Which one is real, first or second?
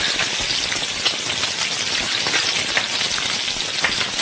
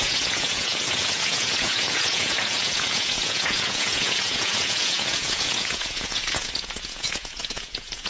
first